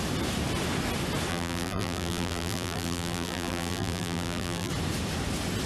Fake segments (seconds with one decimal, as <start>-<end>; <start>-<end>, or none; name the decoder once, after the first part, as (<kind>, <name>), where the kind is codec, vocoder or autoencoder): 1.3-4.7 (vocoder, BigVGAN v2)